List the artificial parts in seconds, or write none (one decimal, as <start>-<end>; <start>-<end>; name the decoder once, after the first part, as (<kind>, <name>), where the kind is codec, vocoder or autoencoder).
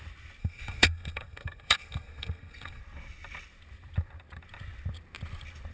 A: 0.4-2.8 (codec, SNAC)